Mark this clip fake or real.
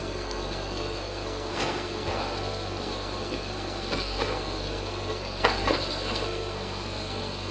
fake